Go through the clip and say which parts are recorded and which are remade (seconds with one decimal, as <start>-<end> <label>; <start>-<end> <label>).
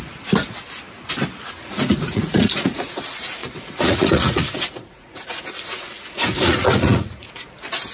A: 0.0-1.6 recorded; 1.6-3.0 remade; 3.0-3.4 recorded; 3.4-7.5 remade; 7.5-7.9 recorded